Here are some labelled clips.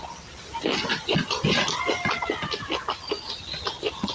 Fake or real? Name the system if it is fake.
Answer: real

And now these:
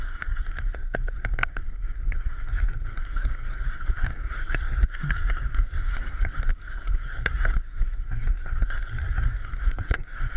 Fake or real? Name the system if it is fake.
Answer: fake, codec, SNAC